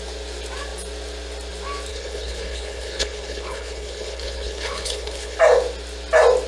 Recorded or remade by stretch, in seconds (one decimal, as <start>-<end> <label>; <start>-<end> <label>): 0.0-1.9 recorded; 1.9-5.4 remade; 5.4-6.5 recorded